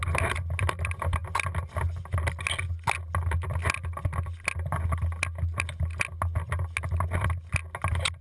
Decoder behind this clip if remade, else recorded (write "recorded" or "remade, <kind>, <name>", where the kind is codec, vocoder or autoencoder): recorded